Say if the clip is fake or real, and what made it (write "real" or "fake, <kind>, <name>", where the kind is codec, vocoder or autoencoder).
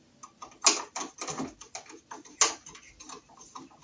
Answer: real